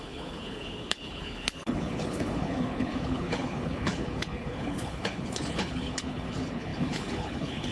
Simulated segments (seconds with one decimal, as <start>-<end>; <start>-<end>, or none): 0.0-7.7

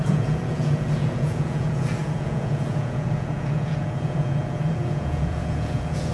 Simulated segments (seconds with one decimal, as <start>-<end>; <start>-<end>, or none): 0.0-6.1

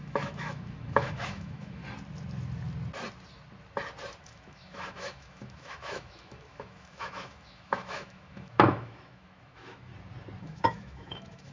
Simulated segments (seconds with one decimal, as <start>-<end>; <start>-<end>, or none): 0.0-1.8; 4.2-9.9; 10.4-11.5

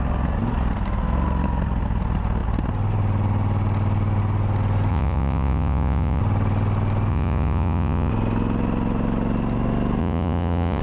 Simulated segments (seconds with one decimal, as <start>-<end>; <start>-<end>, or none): 4.9-6.2; 7.1-8.1; 10.0-10.8

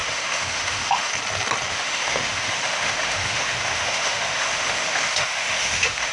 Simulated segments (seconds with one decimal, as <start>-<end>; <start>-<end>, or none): 0.0-1.1; 1.7-6.1

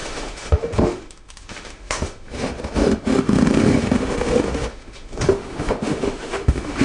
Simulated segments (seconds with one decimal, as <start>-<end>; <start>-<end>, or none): 0.0-6.8